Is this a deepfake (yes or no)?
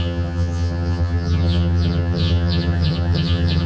yes